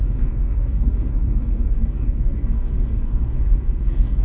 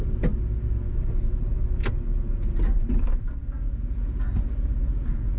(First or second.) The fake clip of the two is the first